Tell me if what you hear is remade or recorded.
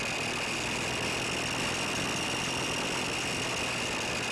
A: recorded